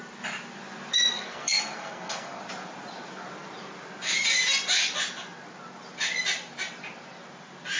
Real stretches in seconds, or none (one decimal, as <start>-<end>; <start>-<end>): 0.0-1.1; 2.4-7.8